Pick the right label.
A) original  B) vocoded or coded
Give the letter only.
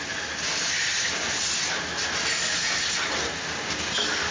A